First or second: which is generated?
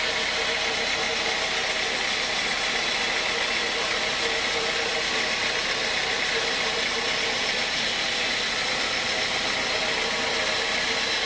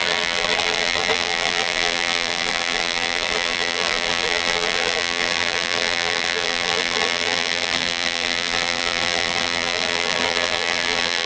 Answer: second